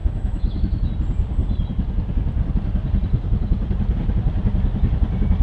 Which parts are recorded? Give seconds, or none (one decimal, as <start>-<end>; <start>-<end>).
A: 0.9-5.4